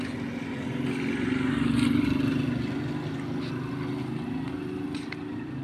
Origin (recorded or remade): recorded